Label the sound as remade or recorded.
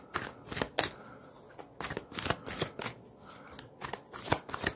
recorded